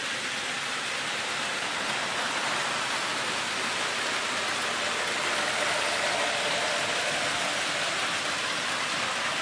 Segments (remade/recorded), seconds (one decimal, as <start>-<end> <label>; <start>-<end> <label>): 0.0-9.4 recorded